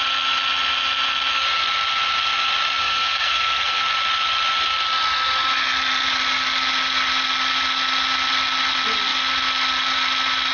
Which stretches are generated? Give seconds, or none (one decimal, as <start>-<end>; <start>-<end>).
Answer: 2.8-3.8